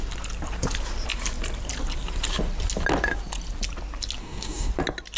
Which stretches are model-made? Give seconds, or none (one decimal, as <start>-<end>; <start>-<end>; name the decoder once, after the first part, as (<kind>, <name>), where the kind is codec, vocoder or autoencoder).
4.2-4.7 (codec, DAC)